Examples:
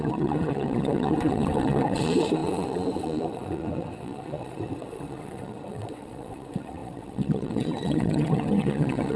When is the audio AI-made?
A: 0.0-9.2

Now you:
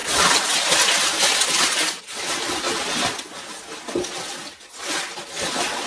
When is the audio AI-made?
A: none